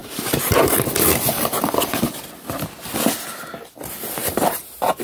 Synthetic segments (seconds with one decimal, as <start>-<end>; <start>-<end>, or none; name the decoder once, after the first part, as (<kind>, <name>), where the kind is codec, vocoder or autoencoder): 0.0-0.7 (vocoder, BigVGAN v2); 4.2-5.0